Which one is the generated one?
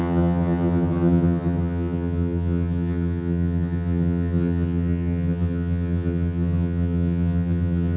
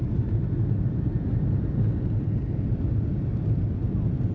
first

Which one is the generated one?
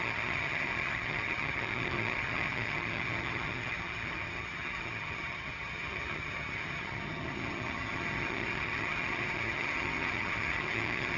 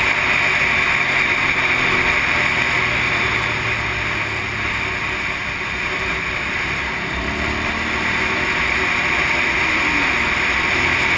first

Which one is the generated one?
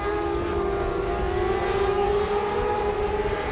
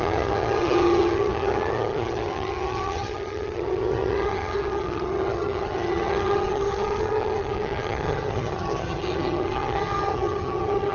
second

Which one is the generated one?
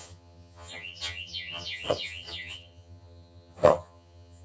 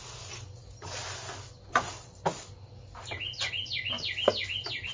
first